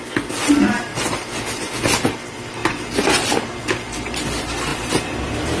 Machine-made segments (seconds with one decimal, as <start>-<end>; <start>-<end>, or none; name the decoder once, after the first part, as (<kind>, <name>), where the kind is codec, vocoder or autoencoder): none